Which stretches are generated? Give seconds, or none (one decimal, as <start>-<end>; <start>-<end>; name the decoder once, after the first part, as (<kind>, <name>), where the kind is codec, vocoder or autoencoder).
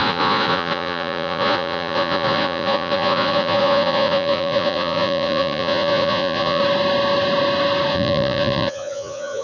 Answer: 0.0-6.6 (vocoder, Vocos); 7.9-9.4